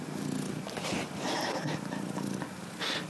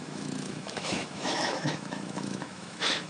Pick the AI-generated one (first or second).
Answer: second